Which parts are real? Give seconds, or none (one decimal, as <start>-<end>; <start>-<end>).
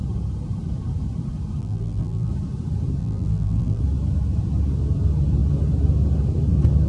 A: 0.0-1.6; 2.3-3.0; 3.8-6.9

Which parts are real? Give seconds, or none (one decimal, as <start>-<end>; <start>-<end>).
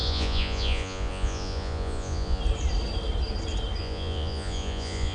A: 2.4-3.8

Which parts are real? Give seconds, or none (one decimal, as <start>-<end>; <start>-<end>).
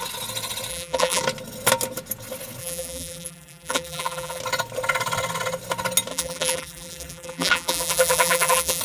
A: 0.0-0.7; 1.2-2.6; 4.4-6.1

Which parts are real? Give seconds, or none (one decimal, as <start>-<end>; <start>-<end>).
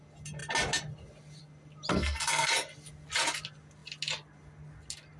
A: 0.0-1.9; 2.5-5.2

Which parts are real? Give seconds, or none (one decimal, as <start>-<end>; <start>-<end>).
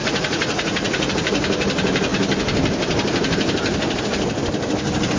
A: 1.1-5.2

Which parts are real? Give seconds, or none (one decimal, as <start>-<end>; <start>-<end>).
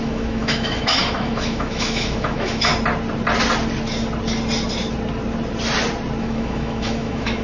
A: 2.7-6.2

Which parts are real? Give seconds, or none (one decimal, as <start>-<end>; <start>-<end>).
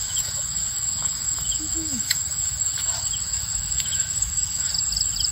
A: 4.7-5.3